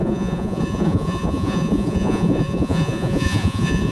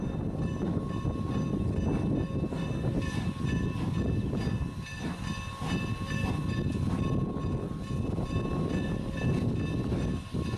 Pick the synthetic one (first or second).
first